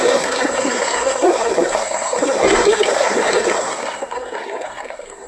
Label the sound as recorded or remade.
remade